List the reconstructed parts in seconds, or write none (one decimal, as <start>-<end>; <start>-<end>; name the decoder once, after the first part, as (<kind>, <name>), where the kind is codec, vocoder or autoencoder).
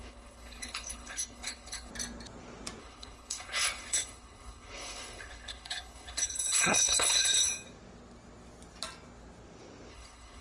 0.0-1.9 (codec, HILCodec); 2.8-7.5; 9.9-10.4